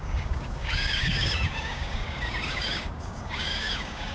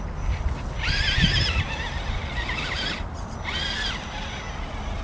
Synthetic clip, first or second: first